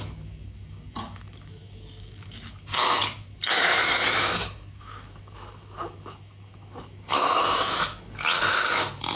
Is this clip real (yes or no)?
no